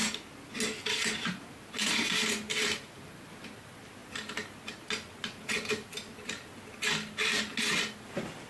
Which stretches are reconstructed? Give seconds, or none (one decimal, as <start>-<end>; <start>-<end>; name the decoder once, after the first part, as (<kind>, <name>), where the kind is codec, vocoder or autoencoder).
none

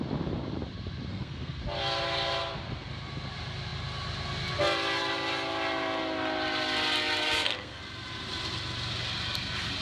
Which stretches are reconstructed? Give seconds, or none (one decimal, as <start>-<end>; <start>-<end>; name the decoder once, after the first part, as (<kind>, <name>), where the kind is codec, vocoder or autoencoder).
1.1-1.6 (codec, SNAC); 7.2-7.8

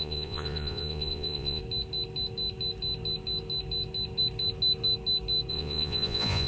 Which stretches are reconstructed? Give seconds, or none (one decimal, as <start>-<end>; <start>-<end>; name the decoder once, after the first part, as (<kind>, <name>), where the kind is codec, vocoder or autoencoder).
0.0-1.6 (vocoder, Vocos); 5.5-6.5